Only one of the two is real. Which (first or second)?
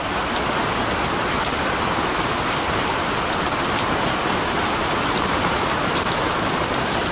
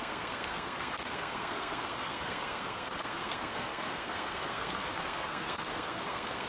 first